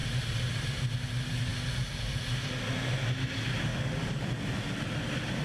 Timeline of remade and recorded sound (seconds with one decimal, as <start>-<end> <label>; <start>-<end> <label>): 0.0-3.7 recorded; 3.7-4.2 remade; 4.2-5.4 recorded